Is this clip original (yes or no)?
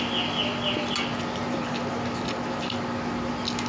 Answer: yes